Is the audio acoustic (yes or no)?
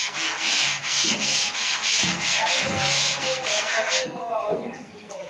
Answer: no